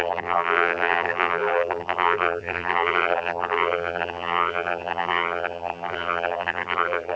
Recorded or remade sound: remade